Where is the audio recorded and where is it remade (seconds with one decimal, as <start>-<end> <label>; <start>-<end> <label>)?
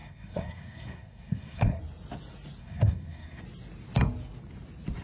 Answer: 0.0-1.8 remade; 1.8-2.6 recorded; 2.6-3.4 remade; 3.4-5.0 recorded